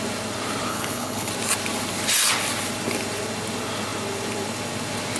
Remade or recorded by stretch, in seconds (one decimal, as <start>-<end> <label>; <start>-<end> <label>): 0.0-0.7 recorded; 0.7-1.3 remade; 1.3-5.2 recorded